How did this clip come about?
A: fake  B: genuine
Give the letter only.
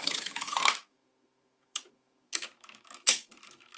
A